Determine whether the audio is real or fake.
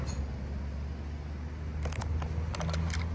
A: real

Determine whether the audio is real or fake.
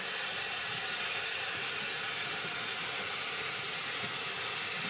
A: real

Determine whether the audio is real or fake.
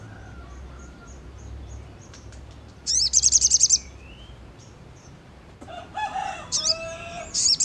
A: fake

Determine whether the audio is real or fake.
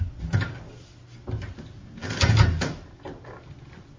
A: real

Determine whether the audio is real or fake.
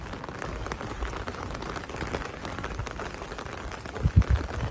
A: real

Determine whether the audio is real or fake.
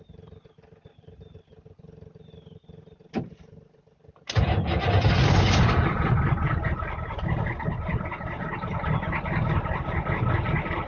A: real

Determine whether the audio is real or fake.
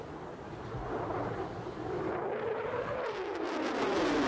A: real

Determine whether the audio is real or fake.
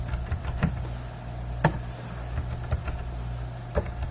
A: real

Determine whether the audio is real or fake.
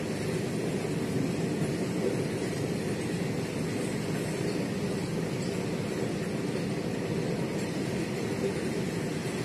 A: real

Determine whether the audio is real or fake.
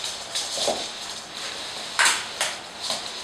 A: real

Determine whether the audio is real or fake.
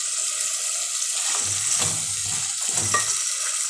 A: real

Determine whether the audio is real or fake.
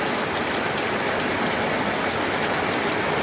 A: real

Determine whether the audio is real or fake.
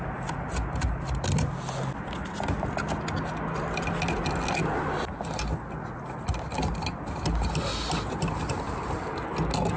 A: real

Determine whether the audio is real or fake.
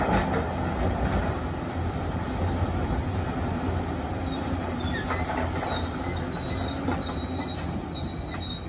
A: real